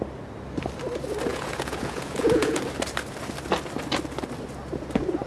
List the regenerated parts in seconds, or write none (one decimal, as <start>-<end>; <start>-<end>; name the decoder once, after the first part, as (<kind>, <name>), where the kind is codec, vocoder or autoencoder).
1.3-2.6 (vocoder, Vocos)